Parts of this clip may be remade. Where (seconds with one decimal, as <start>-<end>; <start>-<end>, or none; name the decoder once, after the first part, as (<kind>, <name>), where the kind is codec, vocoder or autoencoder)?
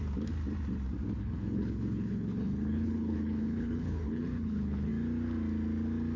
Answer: 1.2-4.9 (codec, HILCodec)